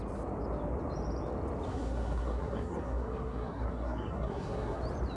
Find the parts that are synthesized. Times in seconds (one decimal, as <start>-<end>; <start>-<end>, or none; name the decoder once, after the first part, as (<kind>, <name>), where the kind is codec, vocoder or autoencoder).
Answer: 1.7-4.8 (codec, SNAC)

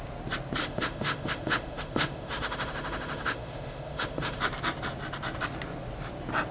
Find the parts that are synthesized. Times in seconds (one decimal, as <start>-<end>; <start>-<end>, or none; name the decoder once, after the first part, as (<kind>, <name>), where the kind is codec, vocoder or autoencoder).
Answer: 0.6-4.4 (autoencoder, DAC-VAE)

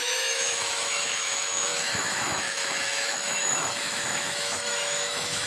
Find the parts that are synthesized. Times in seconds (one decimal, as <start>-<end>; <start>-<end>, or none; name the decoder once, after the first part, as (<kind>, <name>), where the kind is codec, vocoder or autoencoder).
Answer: 0.0-5.5 (autoencoder, DAC-VAE)

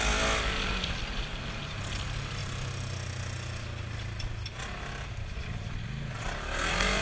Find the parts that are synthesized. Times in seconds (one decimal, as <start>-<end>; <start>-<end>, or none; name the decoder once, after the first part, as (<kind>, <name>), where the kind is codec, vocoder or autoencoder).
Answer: none

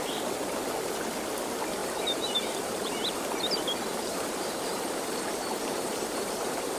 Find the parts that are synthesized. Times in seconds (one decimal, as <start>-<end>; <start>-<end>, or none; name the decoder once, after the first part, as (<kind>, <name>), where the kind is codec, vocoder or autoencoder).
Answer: 1.8-3.2 (vocoder, BigVGAN v2); 3.9-6.8

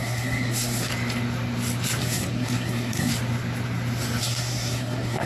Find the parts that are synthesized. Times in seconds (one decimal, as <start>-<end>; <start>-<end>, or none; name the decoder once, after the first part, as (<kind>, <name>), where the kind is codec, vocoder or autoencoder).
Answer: 0.0-0.9 (codec, SNAC); 2.0-3.1; 4.2-5.3

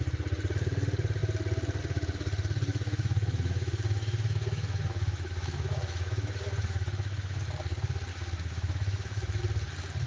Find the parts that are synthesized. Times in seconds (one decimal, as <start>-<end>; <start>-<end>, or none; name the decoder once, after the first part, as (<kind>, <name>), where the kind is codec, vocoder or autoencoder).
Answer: 2.7-7.4 (autoencoder, DAC-VAE); 8.1-9.4